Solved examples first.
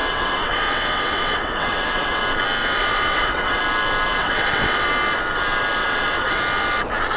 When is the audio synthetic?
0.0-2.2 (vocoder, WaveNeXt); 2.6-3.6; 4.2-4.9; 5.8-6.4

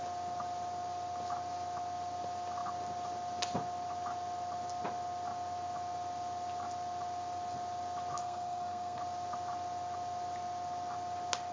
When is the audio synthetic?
8.2-9.0 (codec, SNAC)

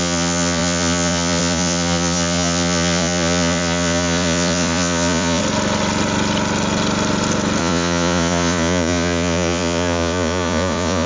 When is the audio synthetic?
0.0-5.4 (vocoder, Vocos); 7.6-11.1

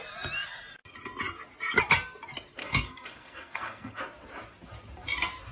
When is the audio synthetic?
2.6-4.0 (codec, SNAC)

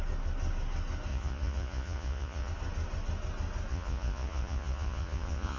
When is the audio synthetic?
1.1-2.5 (vocoder, Vocos); 3.7-5.6

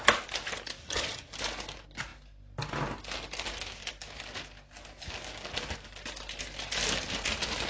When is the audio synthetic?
0.8-1.3 (vocoder, HiFi-GAN)

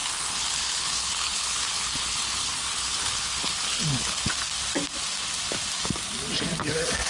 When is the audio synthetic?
0.0-4.3 (codec, HILCodec)